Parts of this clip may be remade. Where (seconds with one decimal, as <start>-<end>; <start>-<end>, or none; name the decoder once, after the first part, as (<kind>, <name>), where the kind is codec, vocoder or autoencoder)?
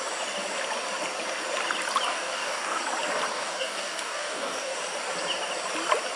2.1-2.8 (codec, DAC); 3.3-4.8